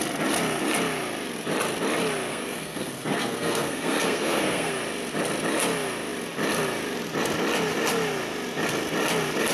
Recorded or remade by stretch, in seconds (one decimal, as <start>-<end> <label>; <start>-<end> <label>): 0.0-2.3 recorded; 2.3-4.7 remade; 4.7-9.5 recorded